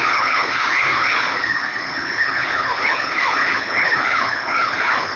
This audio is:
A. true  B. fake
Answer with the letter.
B